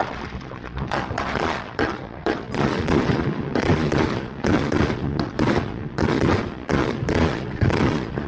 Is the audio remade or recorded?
remade